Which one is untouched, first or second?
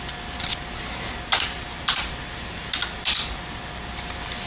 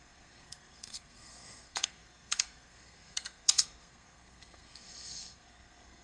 first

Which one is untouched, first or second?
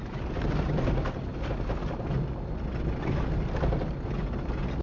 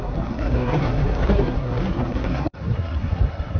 first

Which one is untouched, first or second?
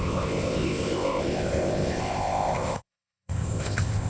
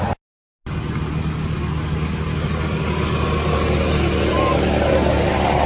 second